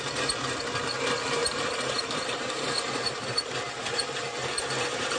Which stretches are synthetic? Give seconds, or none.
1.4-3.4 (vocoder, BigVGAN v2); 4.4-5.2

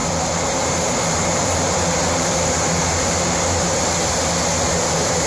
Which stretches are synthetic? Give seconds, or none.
0.0-5.3 (vocoder, BigVGAN v2)

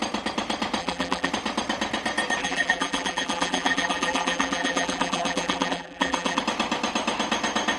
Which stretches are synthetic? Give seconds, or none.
0.8-1.3 (vocoder, BigVGAN v2); 2.4-6.4

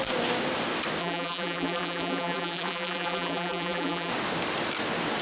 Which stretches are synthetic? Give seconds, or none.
1.0-4.1 (vocoder, BigVGAN v2)